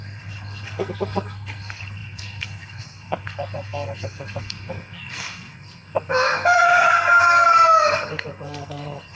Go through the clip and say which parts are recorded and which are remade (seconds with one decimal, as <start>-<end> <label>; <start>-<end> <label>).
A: 0.0-9.2 remade